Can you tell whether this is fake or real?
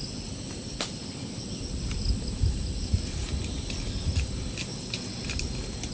real